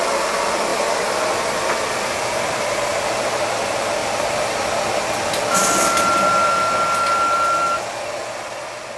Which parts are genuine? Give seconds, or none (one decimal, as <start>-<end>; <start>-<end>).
0.0-0.7; 3.4-4.0; 4.5-9.0